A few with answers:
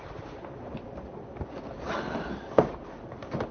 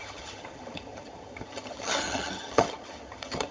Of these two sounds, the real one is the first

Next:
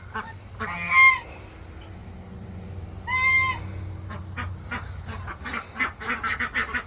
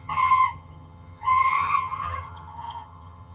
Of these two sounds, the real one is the first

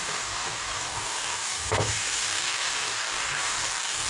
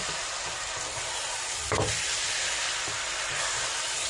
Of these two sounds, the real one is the second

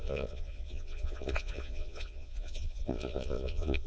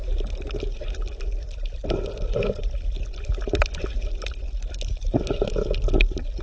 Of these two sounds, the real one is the second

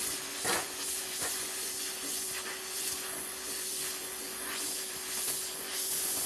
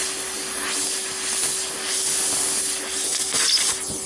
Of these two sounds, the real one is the second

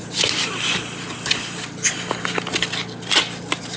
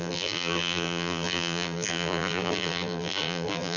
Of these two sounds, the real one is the first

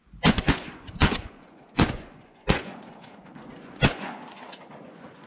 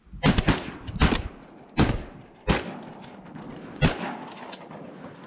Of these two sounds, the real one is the second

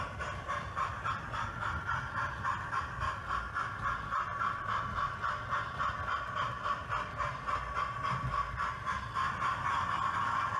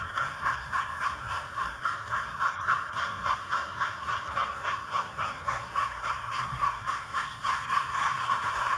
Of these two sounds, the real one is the first